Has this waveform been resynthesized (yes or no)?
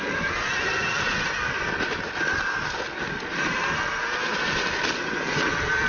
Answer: no